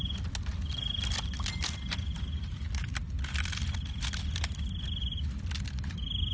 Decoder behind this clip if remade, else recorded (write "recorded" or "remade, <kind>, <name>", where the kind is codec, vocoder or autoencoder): recorded